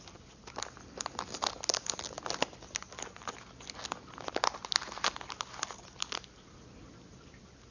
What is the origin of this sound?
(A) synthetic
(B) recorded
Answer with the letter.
B